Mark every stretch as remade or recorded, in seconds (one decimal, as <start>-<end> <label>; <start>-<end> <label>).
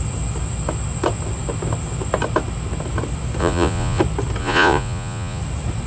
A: 0.0-3.4 recorded; 3.4-4.0 remade; 4.0-4.4 recorded; 4.4-5.4 remade; 5.4-5.9 recorded